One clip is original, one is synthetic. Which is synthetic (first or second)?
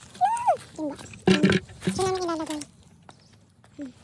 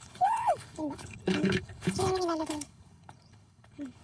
second